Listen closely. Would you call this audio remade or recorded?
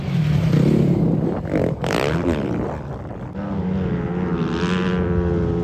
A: recorded